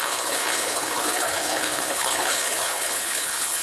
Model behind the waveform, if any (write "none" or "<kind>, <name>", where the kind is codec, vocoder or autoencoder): codec, HILCodec